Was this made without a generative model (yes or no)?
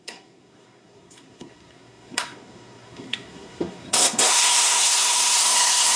no